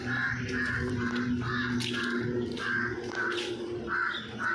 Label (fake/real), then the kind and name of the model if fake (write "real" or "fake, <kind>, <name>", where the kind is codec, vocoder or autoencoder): real